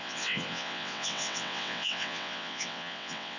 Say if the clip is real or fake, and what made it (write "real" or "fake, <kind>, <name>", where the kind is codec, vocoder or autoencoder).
fake, vocoder, WaveNeXt